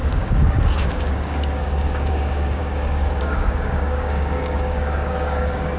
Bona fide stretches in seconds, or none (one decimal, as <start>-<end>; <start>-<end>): none